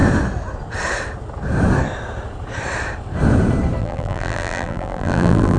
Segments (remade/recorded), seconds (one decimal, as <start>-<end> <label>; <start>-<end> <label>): 0.0-3.8 recorded; 3.8-5.6 remade